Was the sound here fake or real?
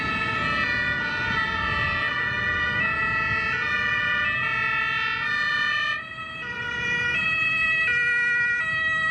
real